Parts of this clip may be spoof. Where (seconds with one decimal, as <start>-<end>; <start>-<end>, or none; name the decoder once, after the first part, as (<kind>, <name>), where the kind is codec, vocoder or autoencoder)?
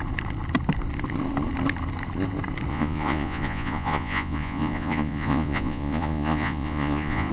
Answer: 2.7-7.3 (vocoder, Vocos)